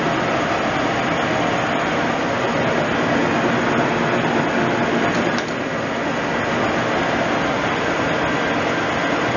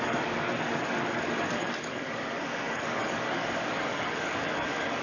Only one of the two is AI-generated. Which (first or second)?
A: second